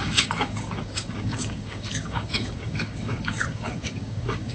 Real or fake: fake